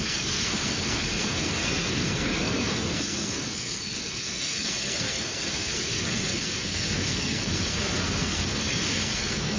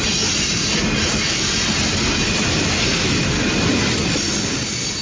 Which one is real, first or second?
second